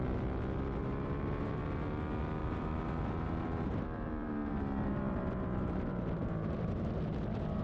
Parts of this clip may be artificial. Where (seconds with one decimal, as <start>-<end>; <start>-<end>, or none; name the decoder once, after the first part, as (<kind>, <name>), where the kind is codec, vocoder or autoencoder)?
0.8-1.6 (vocoder, BigVGAN v2); 2.4-7.0